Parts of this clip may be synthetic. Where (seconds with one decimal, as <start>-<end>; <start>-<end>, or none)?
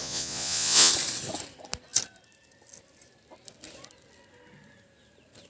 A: 0.0-0.9